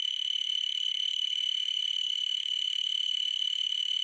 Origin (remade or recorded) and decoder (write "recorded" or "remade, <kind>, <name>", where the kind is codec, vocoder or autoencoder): remade, vocoder, Vocos